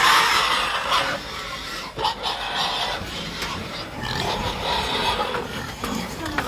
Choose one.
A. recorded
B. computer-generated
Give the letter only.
B